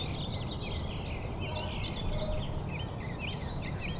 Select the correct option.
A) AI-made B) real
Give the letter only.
B